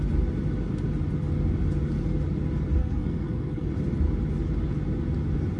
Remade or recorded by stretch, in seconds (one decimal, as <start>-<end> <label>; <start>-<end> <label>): 0.0-2.8 recorded; 2.8-3.7 remade; 3.7-5.6 recorded